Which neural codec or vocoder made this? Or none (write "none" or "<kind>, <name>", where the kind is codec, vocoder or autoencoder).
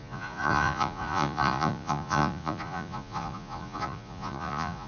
vocoder, Vocos